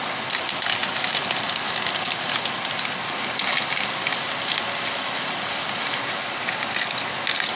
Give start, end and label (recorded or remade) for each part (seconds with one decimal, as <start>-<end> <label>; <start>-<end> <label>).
0.0-7.6 recorded